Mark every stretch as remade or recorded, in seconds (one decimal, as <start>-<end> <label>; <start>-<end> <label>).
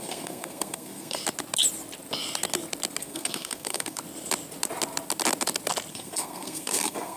0.0-1.2 remade; 1.2-3.0 recorded; 3.0-4.0 remade; 4.0-5.9 recorded; 5.9-7.2 remade